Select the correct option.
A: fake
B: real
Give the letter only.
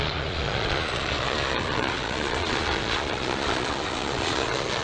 A